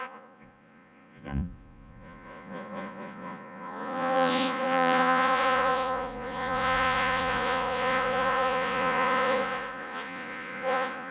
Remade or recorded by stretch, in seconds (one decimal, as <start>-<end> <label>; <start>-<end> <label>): 0.0-11.1 remade